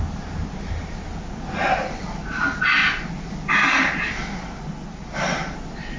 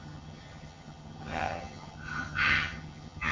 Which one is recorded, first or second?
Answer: first